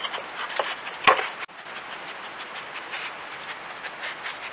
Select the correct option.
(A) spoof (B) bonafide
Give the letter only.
B